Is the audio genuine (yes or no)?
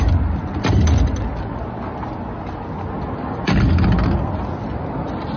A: yes